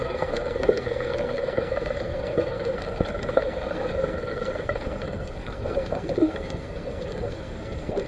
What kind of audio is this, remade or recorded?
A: remade